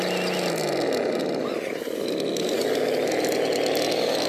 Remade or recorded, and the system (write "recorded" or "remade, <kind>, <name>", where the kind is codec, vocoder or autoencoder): recorded